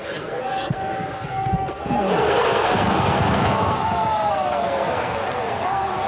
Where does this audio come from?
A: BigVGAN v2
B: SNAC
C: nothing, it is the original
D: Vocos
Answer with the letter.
B